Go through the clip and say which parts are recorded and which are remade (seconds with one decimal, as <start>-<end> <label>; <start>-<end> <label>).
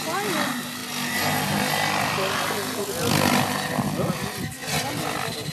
0.0-5.5 recorded